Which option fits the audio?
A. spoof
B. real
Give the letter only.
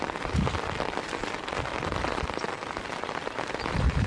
A